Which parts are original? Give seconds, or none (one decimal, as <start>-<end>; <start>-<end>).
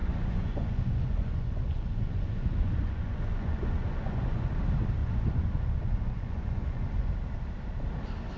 4.5-5.0; 7.1-8.4